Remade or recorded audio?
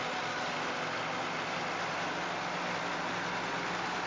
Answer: recorded